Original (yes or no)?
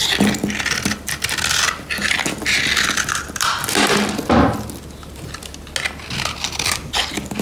yes